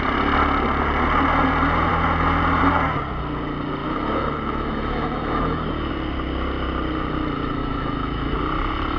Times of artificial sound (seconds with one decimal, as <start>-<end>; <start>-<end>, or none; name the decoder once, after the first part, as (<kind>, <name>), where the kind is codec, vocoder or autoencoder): 3.8-5.9 (autoencoder, DAC-VAE); 7.6-8.4